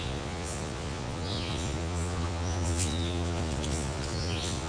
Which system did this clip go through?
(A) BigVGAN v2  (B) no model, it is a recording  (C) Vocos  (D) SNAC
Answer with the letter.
C